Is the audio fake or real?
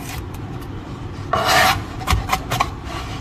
real